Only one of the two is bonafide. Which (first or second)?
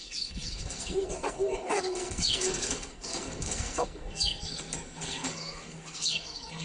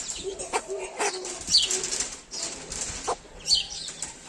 second